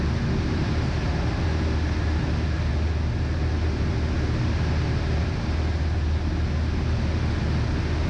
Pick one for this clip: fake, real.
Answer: real